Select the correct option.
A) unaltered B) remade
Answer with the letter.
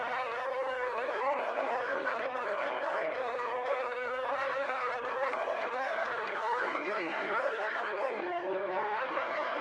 B